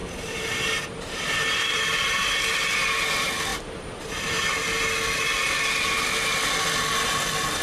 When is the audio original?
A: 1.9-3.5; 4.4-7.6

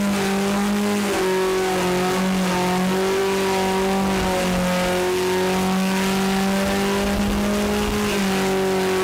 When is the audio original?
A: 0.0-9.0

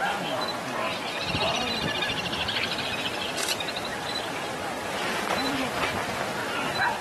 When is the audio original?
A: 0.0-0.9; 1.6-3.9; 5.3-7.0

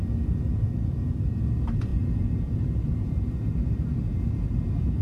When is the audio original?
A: none